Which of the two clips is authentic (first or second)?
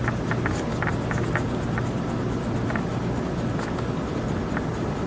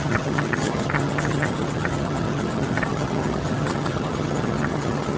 first